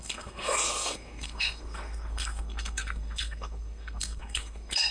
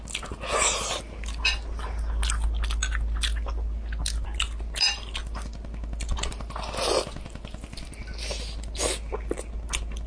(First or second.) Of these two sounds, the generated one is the first